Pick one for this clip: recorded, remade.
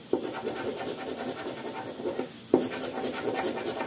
recorded